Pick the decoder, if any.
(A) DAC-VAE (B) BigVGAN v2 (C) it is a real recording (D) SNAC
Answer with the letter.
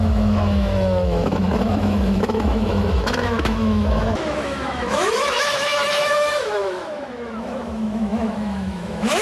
A